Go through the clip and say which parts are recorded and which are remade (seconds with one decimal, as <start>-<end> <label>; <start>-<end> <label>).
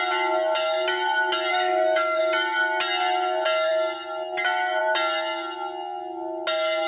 0.0-1.5 recorded; 1.5-2.2 remade; 2.2-6.9 recorded